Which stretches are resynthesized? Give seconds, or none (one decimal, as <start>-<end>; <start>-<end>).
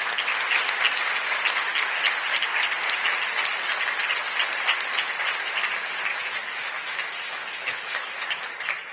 6.1-8.4